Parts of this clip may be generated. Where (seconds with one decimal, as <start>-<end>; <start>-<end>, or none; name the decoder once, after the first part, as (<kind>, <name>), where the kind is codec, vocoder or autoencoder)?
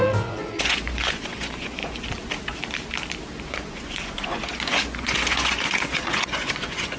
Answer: 0.0-1.8 (vocoder, Vocos); 3.4-7.0